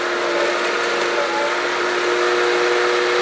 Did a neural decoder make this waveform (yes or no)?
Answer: no